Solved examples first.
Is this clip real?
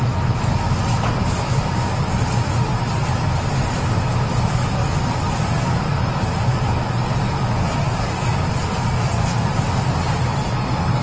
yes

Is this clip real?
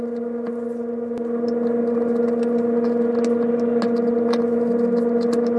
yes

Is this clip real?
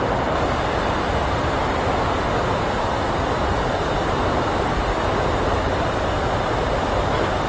yes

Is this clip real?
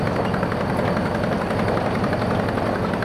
yes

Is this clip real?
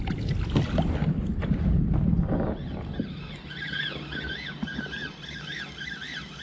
yes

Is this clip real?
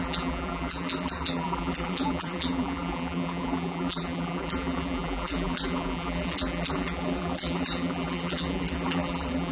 no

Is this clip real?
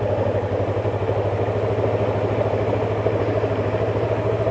yes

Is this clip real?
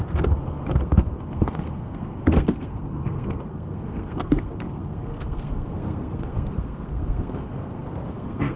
no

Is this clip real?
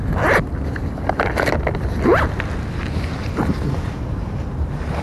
yes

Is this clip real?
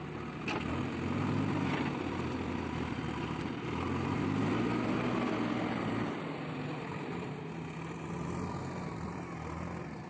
yes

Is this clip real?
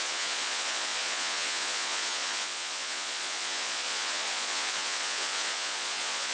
no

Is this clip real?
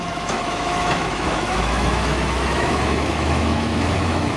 no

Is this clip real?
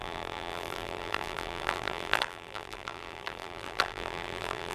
no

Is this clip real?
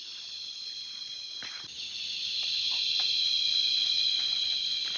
yes